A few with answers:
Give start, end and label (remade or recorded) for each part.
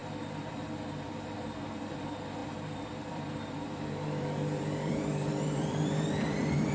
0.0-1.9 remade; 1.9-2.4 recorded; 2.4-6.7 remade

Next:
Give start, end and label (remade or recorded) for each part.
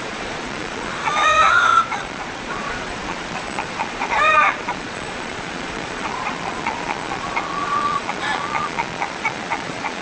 0.0-10.0 remade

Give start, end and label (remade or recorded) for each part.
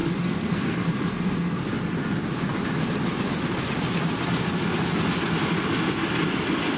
0.0-1.6 remade; 1.6-6.8 recorded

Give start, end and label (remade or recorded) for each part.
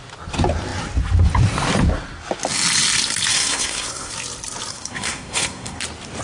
0.0-3.3 recorded; 3.3-4.1 remade; 4.1-4.7 recorded; 4.7-5.8 remade; 5.8-6.2 recorded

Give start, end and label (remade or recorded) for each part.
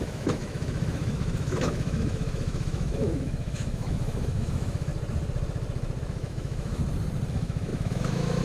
0.0-4.9 remade; 4.9-6.0 recorded; 6.0-6.8 remade; 6.8-7.3 recorded; 7.3-8.4 remade